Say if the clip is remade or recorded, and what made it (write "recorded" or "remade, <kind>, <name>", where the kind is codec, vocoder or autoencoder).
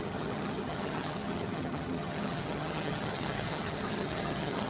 remade, vocoder, HiFi-GAN